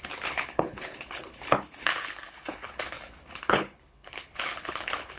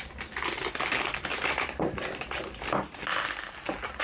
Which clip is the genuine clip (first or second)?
second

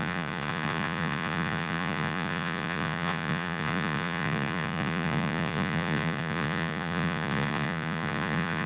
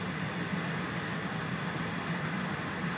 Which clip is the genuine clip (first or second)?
second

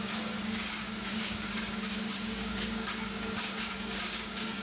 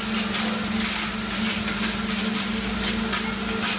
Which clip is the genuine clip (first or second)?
second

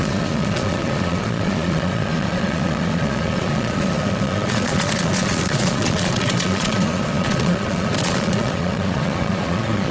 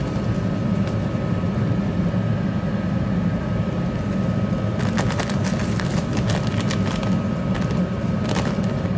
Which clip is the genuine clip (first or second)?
second